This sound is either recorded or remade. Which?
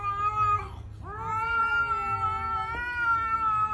recorded